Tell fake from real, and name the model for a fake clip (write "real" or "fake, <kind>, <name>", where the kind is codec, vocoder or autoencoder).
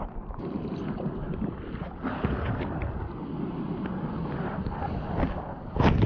real